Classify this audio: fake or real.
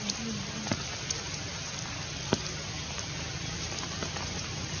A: real